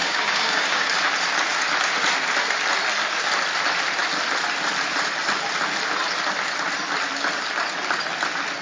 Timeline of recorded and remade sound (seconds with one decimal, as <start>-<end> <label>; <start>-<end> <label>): 0.0-0.9 remade; 0.9-8.6 recorded